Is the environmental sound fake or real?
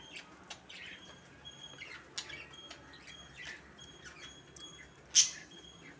real